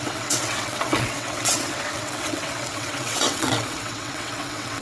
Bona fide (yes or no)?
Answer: no